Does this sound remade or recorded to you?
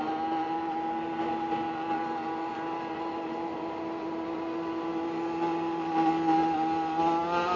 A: recorded